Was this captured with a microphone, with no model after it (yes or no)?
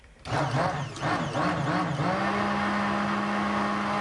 yes